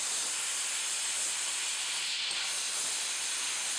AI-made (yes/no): no